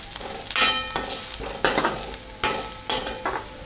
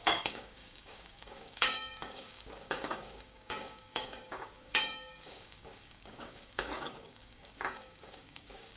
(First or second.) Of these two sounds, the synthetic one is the second